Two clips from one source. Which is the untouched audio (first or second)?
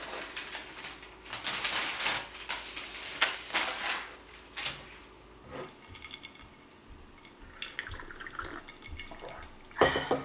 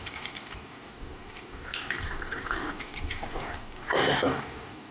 first